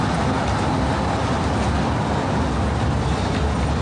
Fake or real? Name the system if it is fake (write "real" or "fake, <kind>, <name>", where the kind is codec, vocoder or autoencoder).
real